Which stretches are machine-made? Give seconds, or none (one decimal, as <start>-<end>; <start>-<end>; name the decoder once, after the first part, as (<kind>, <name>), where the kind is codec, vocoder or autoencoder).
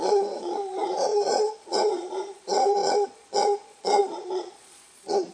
0.0-5.3 (vocoder, Vocos)